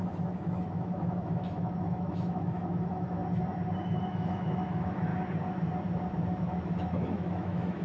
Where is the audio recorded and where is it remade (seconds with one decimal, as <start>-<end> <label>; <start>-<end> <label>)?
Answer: 0.0-3.2 remade; 3.2-3.8 recorded; 3.8-5.1 remade; 5.1-6.4 recorded; 6.4-7.8 remade